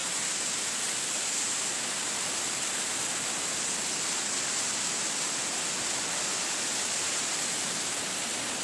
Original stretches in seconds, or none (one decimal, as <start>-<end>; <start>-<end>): 0.0-8.6